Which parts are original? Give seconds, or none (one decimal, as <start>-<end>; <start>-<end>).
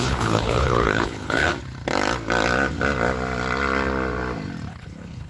1.5-4.7